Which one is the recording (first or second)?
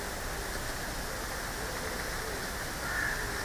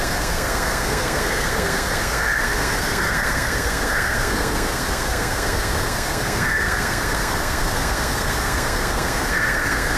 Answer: first